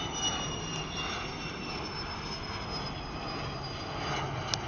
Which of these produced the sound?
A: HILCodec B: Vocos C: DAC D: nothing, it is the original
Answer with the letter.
D